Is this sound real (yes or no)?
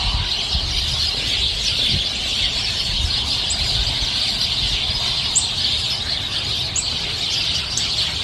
yes